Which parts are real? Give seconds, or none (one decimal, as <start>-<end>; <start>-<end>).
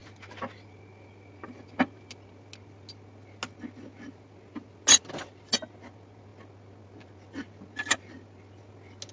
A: 0.0-9.1